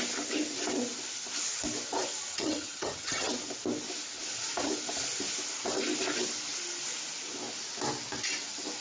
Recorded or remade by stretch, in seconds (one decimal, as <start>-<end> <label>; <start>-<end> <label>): 0.0-2.3 recorded; 2.3-3.3 remade; 3.3-8.8 recorded